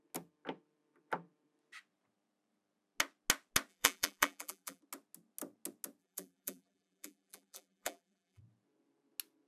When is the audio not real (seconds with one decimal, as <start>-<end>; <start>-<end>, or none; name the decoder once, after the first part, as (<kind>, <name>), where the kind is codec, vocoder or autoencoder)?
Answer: 3.7-4.8 (vocoder, BigVGAN v2); 6.0-8.4

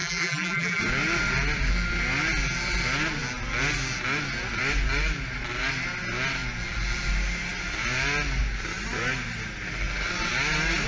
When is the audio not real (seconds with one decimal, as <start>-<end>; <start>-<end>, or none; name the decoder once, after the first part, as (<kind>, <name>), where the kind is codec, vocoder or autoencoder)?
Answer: 0.0-0.8 (vocoder, BigVGAN v2)

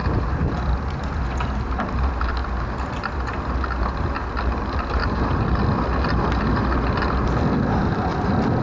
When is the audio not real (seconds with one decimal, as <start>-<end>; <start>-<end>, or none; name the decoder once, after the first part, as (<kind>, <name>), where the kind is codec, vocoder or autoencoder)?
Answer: 0.0-1.2 (vocoder, BigVGAN v2); 2.4-3.5

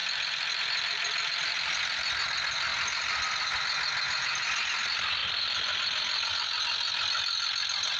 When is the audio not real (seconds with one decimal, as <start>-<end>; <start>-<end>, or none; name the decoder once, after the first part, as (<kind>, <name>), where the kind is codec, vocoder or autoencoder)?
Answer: 0.0-1.8 (vocoder, BigVGAN v2); 5.2-6.3

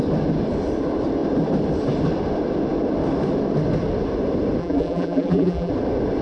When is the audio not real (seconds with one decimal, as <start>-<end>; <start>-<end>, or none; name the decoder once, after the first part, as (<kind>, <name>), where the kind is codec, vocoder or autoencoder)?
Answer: 4.6-5.7 (vocoder, BigVGAN v2)

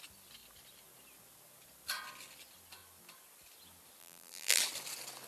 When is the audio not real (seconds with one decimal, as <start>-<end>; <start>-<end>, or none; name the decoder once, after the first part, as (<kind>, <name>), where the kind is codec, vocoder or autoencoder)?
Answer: 4.0-4.6 (vocoder, BigVGAN v2)

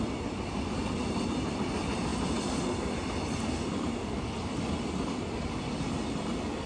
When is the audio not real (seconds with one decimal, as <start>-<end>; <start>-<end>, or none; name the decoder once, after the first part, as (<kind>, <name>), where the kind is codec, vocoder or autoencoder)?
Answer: 2.1-6.1 (vocoder, BigVGAN v2)